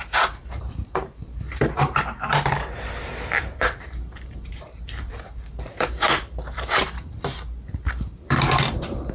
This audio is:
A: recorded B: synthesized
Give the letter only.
B